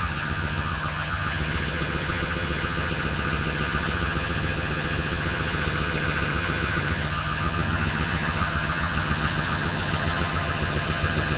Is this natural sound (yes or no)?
no